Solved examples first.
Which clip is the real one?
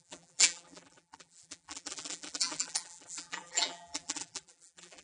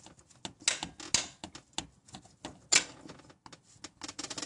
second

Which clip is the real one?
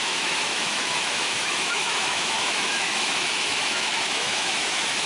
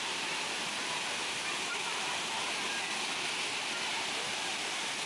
second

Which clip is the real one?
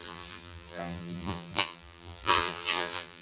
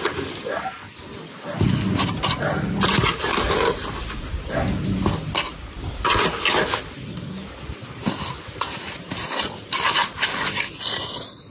second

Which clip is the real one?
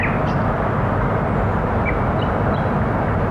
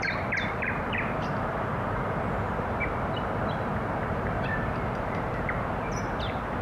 first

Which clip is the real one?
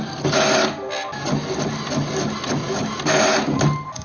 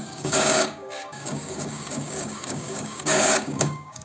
first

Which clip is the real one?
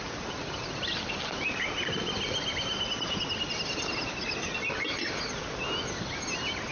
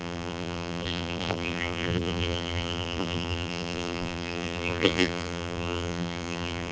first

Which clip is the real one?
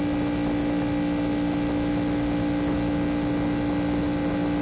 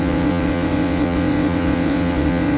first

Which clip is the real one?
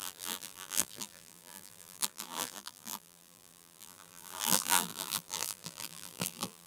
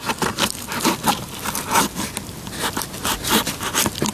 second